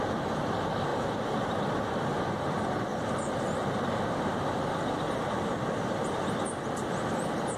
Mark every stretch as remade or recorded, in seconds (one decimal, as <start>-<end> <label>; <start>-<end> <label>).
0.0-0.9 recorded; 0.9-2.2 remade; 2.2-2.9 recorded; 2.9-4.4 remade; 4.4-7.6 recorded